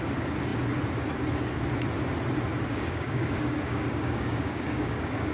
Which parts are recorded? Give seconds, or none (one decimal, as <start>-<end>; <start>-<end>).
0.0-2.7